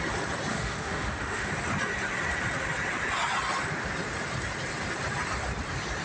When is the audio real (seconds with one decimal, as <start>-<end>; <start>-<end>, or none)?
0.0-0.5; 1.5-6.0